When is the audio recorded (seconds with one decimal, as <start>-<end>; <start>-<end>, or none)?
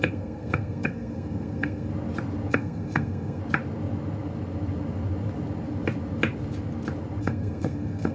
1.9-2.5; 3.4-7.2